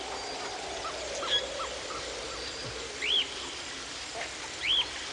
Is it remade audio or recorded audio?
recorded